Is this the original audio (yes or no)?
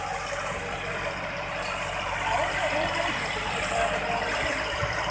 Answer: no